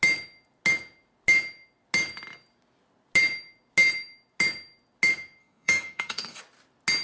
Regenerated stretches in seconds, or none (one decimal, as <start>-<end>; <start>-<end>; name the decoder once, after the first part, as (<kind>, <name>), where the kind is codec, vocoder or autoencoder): 5.4-6.4 (codec, SNAC)